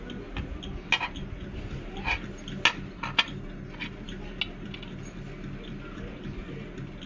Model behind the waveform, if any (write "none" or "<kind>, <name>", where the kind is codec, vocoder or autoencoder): none